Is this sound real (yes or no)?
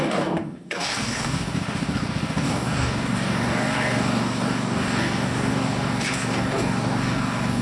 no